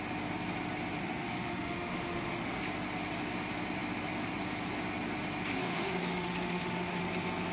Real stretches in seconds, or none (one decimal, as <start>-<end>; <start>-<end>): 0.0-1.0; 2.6-5.6; 7.0-7.5